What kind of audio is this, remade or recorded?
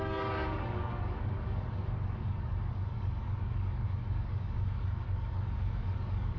remade